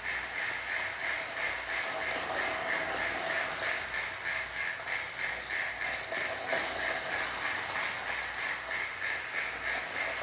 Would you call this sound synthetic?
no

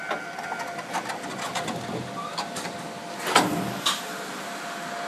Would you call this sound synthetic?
no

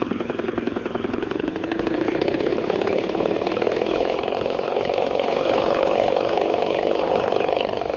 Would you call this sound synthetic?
yes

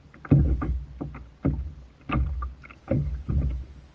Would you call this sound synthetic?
no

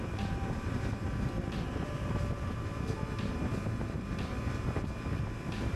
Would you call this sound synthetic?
yes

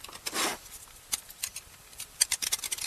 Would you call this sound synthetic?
yes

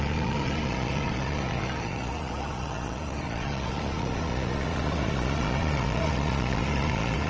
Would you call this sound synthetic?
yes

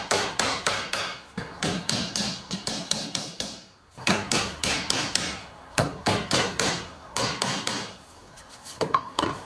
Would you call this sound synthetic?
yes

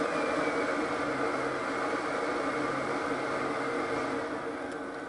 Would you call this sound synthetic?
no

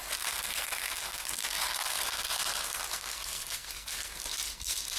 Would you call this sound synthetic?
yes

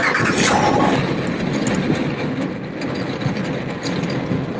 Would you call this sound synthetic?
no